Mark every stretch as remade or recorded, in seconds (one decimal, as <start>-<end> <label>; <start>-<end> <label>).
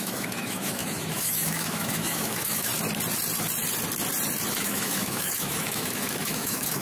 0.0-2.7 remade; 2.7-4.5 recorded; 4.5-6.8 remade